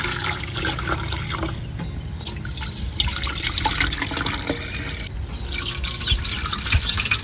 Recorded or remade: recorded